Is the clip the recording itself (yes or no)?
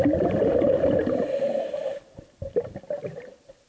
yes